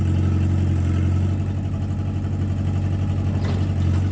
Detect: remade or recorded recorded